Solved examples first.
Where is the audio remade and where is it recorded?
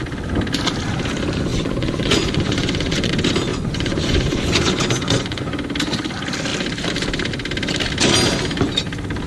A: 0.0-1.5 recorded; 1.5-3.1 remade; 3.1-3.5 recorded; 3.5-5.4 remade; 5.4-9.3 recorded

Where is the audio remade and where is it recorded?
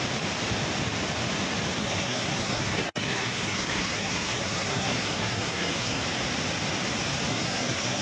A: 0.0-1.8 recorded; 1.8-6.0 remade; 6.0-7.3 recorded; 7.3-8.0 remade